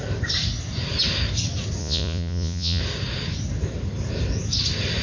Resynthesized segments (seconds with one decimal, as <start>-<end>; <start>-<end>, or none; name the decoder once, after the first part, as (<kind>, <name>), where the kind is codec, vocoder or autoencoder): 1.8-2.8 (vocoder, Vocos)